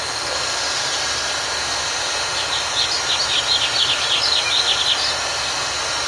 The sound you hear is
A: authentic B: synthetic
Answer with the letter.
A